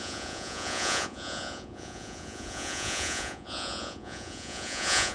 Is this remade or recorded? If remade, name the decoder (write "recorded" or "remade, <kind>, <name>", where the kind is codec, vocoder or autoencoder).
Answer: remade, vocoder, Vocos